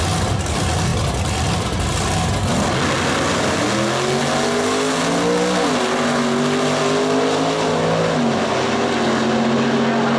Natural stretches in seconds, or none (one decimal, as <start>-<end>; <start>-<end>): 0.0-10.2